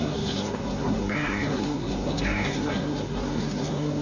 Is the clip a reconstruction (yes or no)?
yes